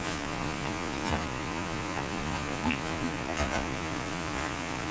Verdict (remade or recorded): remade